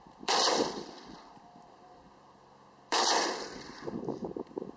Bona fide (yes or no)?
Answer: no